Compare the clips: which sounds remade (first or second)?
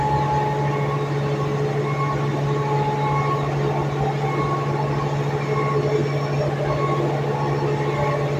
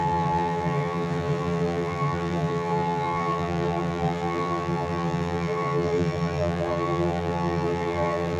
second